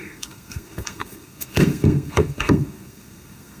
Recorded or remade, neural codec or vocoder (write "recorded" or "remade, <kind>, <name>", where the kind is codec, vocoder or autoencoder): remade, codec, SNAC